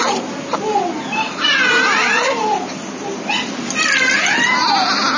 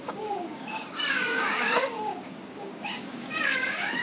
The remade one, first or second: second